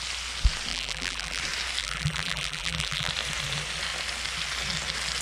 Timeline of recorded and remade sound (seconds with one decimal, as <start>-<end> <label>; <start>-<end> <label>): 0.0-0.7 recorded; 0.7-1.4 remade; 1.4-1.8 recorded; 1.8-3.1 remade; 3.1-5.2 recorded